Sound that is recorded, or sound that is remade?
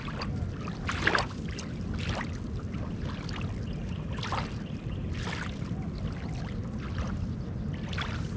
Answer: recorded